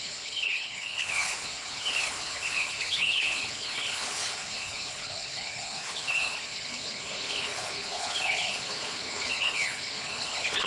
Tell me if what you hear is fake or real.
fake